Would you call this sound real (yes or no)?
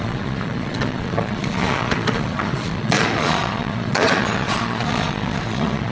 no